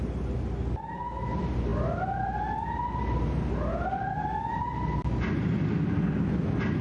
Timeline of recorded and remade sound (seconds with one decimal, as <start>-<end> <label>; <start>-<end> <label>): 0.0-6.8 recorded